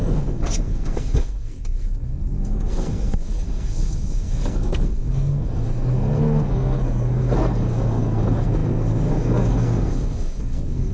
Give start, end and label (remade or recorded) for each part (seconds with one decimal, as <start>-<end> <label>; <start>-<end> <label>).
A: 0.0-10.9 remade

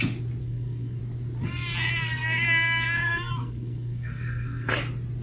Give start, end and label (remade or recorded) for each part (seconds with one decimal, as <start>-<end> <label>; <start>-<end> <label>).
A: 0.0-0.4 recorded; 0.4-1.0 remade; 1.0-2.0 recorded; 2.0-4.7 remade; 4.7-5.2 recorded